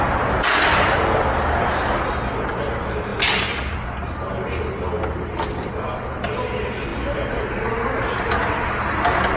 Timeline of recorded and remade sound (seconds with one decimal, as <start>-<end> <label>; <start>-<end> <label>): 0.0-9.4 recorded